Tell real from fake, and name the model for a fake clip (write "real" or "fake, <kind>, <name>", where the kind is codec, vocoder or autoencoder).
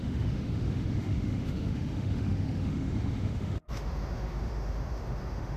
fake, autoencoder, DAC-VAE